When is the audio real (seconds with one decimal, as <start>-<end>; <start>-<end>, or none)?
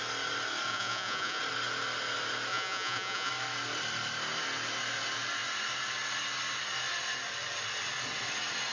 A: 0.0-0.7; 1.4-2.5; 3.3-8.7